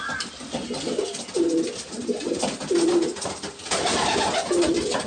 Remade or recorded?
recorded